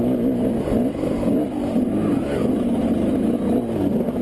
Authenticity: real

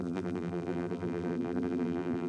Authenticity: fake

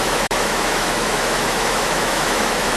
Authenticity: fake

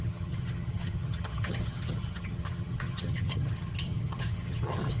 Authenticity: fake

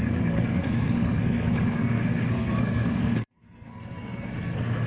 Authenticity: fake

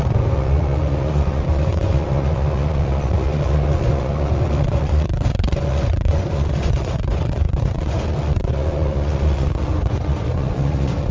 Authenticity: fake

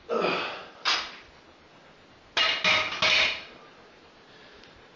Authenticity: real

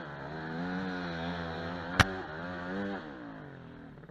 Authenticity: real